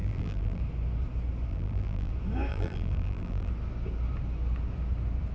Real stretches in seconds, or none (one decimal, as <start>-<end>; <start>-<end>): 0.6-1.5; 2.1-2.5; 3.5-5.3